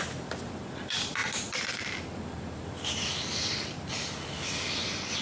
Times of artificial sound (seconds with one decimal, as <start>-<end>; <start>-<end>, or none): 0.0-5.2